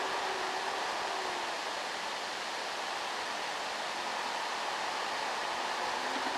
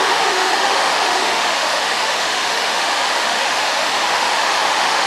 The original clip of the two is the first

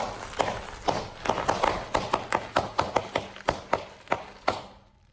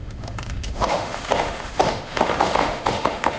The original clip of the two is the first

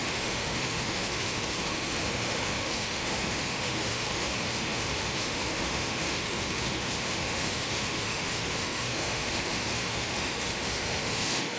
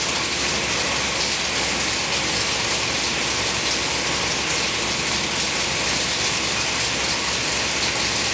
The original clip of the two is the second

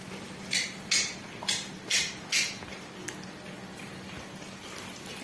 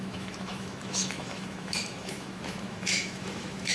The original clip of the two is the first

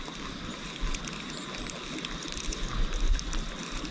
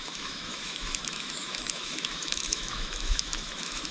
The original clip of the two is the first